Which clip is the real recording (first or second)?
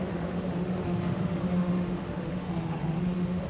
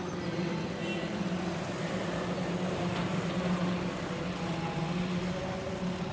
second